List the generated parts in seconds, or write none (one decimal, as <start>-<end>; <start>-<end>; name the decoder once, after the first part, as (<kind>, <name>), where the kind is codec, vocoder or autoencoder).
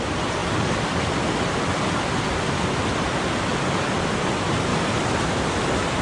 none